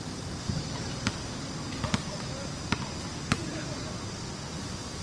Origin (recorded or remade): recorded